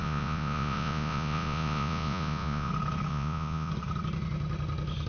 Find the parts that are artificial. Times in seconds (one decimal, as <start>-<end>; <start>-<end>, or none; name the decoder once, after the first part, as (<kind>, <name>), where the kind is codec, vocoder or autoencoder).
0.0-2.7 (vocoder, Vocos); 3.1-3.7